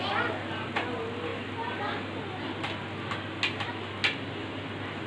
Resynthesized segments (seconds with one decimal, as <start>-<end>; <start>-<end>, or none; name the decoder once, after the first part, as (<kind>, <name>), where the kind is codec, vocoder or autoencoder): none

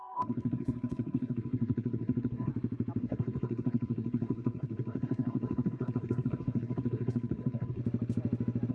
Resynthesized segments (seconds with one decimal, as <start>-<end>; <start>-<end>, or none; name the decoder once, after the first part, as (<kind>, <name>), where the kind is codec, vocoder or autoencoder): 0.0-2.5 (codec, SNAC); 3.0-7.8

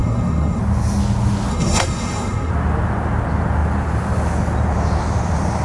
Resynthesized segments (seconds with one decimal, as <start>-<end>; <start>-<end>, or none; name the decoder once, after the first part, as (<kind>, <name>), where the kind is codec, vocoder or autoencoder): 0.0-0.6 (codec, SNAC); 1.5-2.5

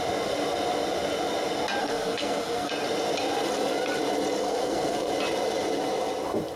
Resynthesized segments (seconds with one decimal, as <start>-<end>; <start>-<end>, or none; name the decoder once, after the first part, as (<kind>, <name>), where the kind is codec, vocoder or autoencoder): 1.8-2.7 (codec, SNAC); 4.4-5.1

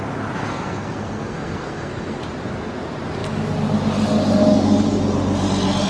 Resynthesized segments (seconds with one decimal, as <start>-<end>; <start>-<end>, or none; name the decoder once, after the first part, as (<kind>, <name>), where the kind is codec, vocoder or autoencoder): 0.4-2.2 (codec, SNAC)

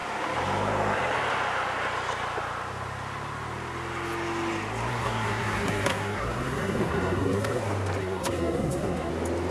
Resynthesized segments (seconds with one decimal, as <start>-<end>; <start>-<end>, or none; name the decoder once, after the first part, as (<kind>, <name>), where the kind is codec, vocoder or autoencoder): 4.9-7.6 (codec, SNAC); 8.0-9.1

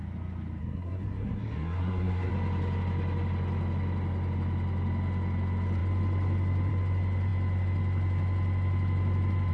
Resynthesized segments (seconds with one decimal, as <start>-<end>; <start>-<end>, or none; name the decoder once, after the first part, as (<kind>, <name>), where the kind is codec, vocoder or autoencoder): 0.6-2.3 (codec, SNAC)

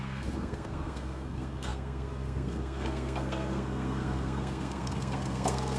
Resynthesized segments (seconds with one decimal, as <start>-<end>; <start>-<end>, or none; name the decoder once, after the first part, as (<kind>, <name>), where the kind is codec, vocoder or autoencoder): 0.0-5.8 (codec, SNAC)